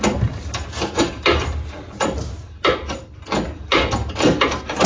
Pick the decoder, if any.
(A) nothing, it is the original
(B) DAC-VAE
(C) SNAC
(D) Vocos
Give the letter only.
A